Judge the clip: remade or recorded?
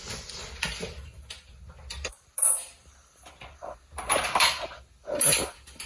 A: recorded